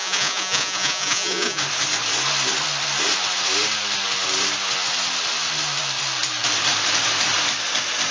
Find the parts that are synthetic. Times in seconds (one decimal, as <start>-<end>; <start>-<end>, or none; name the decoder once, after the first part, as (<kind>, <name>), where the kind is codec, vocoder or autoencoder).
0.0-1.6 (vocoder, Vocos)